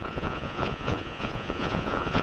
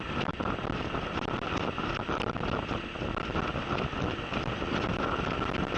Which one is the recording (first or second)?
second